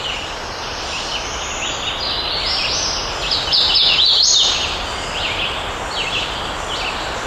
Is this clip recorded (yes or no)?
yes